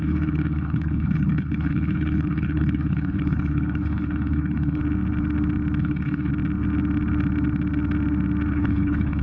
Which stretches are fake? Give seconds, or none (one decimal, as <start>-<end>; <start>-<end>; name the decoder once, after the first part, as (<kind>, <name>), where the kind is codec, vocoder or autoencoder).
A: 0.0-4.8 (codec, HILCodec); 5.8-6.3; 8.5-9.2